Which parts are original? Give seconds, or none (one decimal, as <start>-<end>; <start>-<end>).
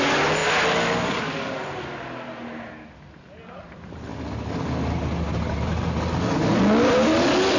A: 0.0-7.6